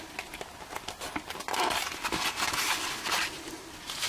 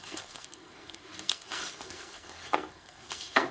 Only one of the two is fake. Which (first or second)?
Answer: second